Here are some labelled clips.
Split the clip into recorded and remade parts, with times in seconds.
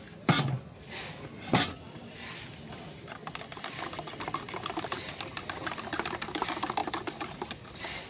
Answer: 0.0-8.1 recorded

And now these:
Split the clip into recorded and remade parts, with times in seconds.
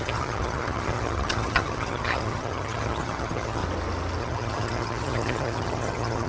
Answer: 0.0-3.6 remade; 3.6-4.2 recorded; 4.2-6.3 remade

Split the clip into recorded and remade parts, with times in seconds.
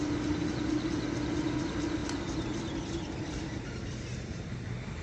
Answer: 0.0-0.4 remade; 0.4-1.6 recorded; 1.6-2.0 remade; 2.0-5.0 recorded